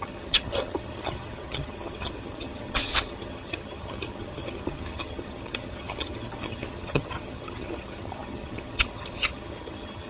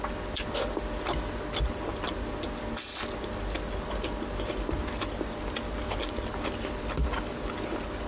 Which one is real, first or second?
second